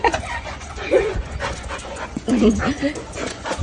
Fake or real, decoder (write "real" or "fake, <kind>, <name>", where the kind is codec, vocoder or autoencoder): fake, vocoder, Vocos